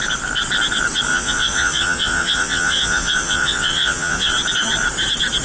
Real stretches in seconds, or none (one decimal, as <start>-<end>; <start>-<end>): 0.0-1.1; 4.3-5.4